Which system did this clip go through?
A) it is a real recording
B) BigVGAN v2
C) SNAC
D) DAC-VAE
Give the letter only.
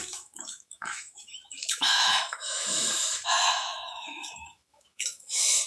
D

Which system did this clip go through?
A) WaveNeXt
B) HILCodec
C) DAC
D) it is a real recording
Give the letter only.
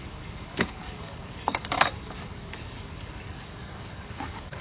C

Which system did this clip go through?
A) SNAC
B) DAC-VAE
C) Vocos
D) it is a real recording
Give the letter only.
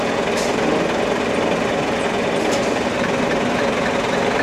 D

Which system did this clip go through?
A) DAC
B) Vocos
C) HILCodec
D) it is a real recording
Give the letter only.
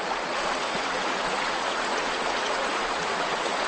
B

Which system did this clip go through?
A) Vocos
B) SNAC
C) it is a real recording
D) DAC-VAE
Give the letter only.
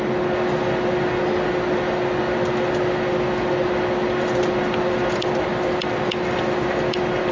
C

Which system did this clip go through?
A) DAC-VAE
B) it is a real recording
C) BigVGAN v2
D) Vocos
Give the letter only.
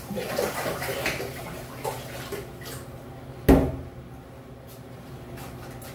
B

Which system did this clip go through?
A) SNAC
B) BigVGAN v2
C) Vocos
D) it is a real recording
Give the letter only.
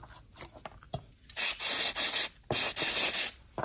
D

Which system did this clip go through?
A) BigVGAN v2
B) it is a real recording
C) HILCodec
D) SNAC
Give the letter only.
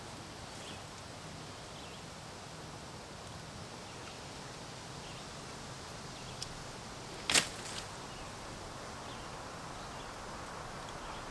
B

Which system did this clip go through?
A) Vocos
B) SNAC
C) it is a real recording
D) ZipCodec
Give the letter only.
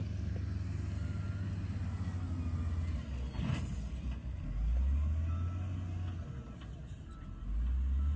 C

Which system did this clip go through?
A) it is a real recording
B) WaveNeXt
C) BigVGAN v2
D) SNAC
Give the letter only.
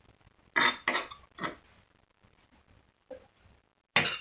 A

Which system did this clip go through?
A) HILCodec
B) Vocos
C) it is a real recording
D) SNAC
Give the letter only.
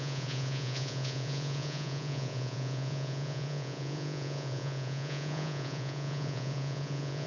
B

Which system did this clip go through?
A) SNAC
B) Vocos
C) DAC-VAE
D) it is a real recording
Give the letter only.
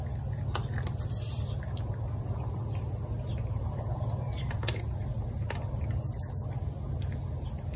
D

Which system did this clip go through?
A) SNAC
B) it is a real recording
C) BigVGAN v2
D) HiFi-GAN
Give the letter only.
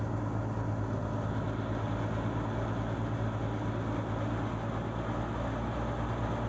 B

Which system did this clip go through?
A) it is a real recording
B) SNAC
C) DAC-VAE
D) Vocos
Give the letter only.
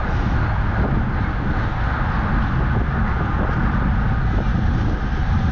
A